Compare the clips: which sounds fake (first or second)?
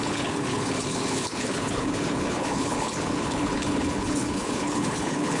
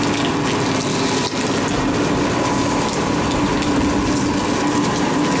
first